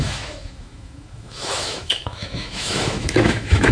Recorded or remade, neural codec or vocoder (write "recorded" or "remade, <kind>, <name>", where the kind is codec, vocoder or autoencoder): remade, autoencoder, DAC-VAE